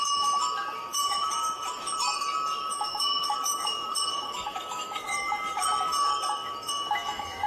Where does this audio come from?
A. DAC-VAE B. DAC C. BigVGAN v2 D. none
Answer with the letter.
A